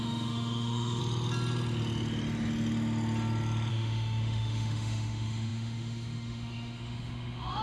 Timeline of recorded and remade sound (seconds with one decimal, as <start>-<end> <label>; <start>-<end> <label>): 0.0-1.0 remade; 1.0-3.7 recorded; 3.7-7.6 remade